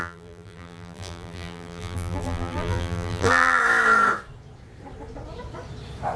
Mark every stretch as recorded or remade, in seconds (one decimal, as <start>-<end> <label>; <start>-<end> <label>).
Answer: 0.0-3.6 remade; 3.6-6.2 recorded